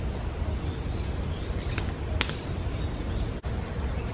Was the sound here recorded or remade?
recorded